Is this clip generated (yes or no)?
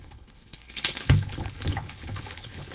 yes